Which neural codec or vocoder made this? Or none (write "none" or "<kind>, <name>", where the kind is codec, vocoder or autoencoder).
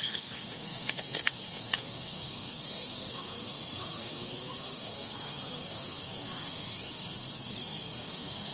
codec, SNAC